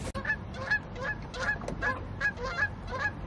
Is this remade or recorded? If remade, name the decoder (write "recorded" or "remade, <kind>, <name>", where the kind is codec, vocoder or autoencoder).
recorded